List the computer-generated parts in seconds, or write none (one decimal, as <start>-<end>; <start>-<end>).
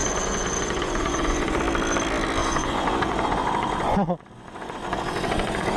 0.0-1.6; 2.4-5.8